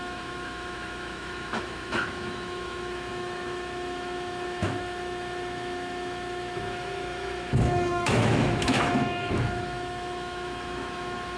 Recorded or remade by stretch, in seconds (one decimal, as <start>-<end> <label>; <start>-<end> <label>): 0.0-11.4 remade